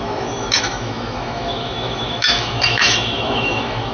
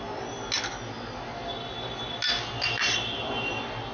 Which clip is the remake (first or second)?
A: first